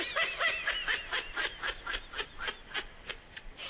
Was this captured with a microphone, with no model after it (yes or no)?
yes